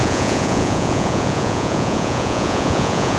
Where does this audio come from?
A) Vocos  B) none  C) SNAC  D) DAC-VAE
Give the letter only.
A